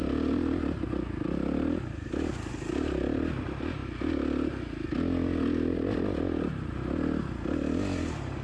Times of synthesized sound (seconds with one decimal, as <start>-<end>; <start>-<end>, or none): none